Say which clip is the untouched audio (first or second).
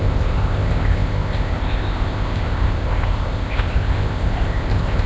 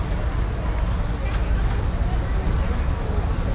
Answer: second